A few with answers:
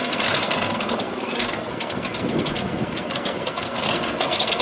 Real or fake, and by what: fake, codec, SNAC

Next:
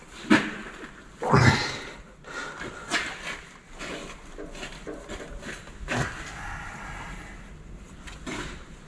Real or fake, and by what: real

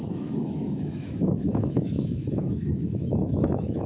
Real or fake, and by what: fake, autoencoder, DAC-VAE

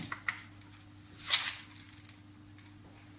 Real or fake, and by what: real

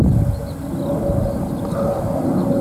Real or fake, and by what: real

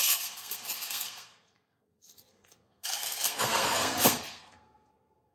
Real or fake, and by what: fake, codec, SNAC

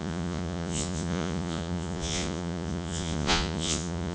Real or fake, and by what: fake, vocoder, Vocos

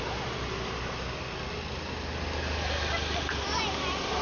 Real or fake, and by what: real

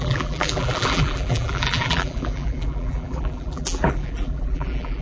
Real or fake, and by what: fake, vocoder, BigVGAN v2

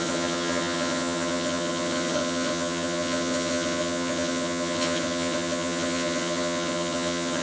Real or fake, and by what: fake, vocoder, HiFi-GAN